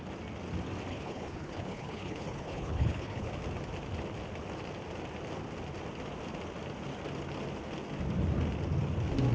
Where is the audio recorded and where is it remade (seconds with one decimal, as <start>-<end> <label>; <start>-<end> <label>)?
0.0-0.9 recorded; 0.9-3.3 remade; 3.3-9.3 recorded

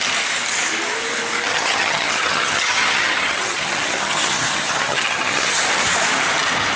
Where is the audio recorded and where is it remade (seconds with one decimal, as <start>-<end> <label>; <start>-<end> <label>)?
0.0-1.5 recorded; 1.5-5.6 remade; 5.6-6.8 recorded

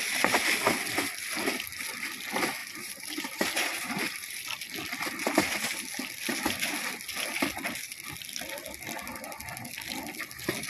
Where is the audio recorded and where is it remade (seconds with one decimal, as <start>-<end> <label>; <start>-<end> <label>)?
0.0-2.6 recorded; 2.6-4.3 remade; 4.3-10.7 recorded

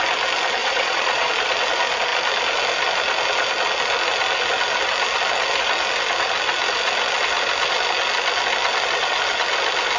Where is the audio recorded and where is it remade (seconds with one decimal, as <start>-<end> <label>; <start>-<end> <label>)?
0.0-0.6 recorded; 0.6-1.3 remade; 1.3-10.0 recorded

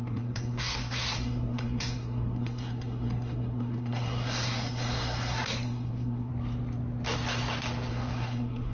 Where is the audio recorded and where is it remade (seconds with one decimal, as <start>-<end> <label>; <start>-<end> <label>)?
0.0-6.3 remade; 6.3-7.9 recorded; 7.9-8.7 remade

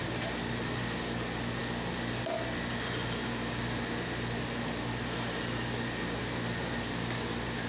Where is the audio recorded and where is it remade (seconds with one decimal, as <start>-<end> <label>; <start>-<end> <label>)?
0.0-7.7 recorded

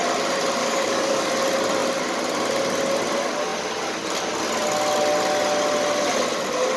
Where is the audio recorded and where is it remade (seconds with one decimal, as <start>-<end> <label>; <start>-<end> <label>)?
0.0-0.6 recorded; 0.6-1.3 remade; 1.3-6.8 recorded

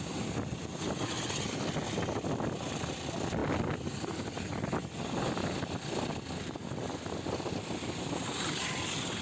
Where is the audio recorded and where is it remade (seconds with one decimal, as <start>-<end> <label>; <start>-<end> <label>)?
0.0-9.2 recorded